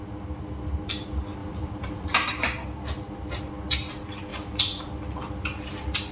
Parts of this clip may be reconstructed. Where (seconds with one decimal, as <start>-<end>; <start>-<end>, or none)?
1.4-3.5; 4.3-4.8